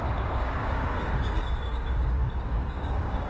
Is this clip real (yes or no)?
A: no